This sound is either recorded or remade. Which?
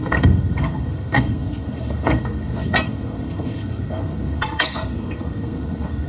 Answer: remade